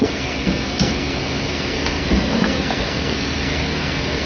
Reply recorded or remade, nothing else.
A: remade